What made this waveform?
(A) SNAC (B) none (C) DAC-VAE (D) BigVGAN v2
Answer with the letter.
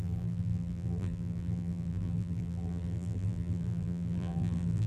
D